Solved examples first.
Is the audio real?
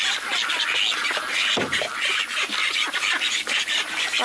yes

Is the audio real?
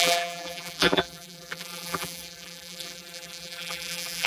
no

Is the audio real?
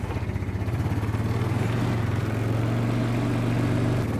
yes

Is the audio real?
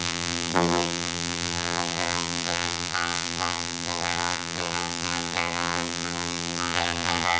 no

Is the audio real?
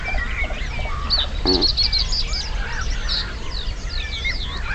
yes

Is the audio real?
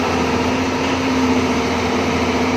no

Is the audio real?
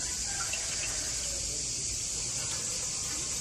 yes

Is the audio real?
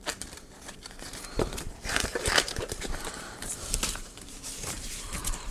no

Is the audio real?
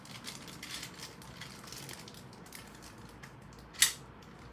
yes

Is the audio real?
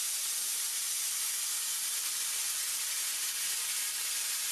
no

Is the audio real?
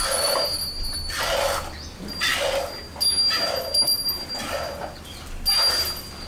yes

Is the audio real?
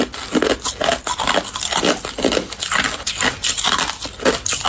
yes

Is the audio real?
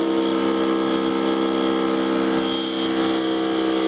yes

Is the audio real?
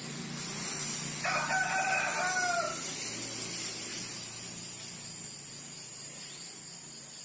yes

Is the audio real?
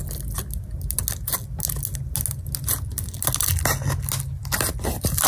yes